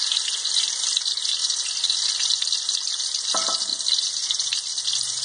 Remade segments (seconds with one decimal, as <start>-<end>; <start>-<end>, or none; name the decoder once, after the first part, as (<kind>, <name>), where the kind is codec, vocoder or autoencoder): none